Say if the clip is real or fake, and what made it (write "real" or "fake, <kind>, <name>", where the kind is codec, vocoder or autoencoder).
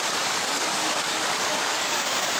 fake, codec, DAC